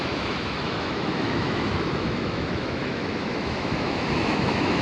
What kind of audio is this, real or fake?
fake